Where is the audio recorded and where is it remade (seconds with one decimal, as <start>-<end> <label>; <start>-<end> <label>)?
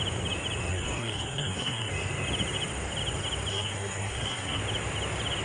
0.0-0.7 recorded; 0.7-1.9 remade; 1.9-3.5 recorded; 3.5-4.6 remade; 4.6-5.4 recorded